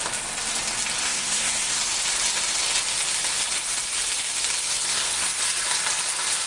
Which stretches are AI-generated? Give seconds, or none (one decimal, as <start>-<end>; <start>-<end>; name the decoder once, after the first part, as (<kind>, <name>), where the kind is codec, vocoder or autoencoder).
1.0-1.8 (codec, SNAC); 4.9-5.4